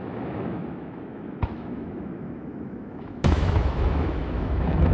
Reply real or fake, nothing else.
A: fake